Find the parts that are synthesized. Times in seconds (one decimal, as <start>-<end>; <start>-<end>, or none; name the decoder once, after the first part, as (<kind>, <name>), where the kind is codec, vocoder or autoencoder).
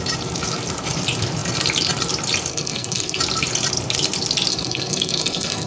2.5-3.2 (codec, SNAC); 4.5-5.7